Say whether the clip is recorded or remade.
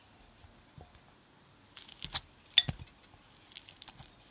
recorded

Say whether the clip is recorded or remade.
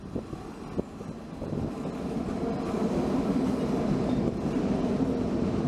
recorded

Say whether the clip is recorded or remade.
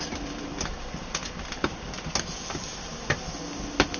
recorded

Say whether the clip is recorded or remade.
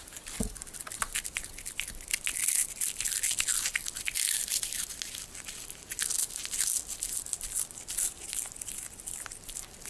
recorded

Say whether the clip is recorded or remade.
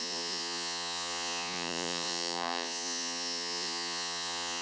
remade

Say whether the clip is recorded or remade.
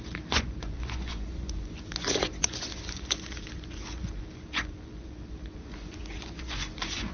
remade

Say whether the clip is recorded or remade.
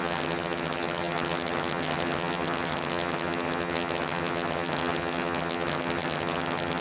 remade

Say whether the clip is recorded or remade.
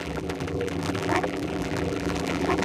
remade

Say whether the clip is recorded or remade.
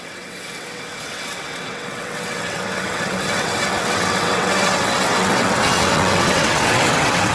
remade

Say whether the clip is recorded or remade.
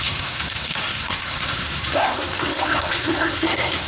remade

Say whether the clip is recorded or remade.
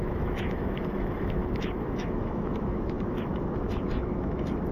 remade